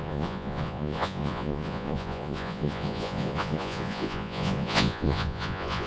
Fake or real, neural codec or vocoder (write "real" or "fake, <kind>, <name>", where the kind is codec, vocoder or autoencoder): fake, vocoder, Vocos